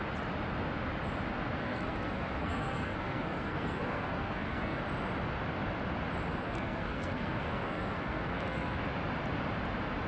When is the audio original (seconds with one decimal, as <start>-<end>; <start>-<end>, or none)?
0.0-1.6; 4.8-6.3; 8.8-10.1